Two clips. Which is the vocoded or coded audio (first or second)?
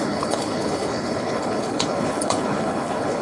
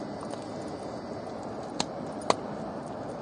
first